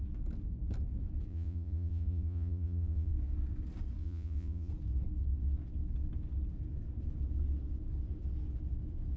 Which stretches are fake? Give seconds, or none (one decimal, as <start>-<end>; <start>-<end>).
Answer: 1.3-3.1; 4.0-4.7